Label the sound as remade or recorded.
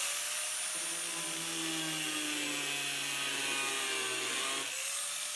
recorded